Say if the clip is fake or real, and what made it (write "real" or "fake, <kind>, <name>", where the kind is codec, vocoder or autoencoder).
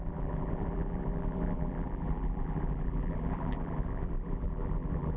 fake, vocoder, BigVGAN v2